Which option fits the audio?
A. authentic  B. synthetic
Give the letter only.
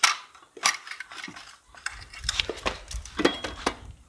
A